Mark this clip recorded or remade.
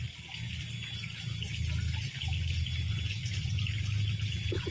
recorded